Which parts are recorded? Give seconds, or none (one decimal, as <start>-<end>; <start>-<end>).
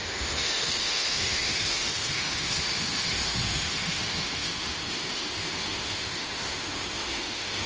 none